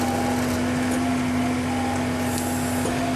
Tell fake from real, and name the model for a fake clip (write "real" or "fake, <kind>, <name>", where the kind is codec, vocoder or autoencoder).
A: real